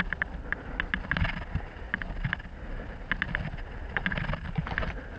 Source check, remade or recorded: recorded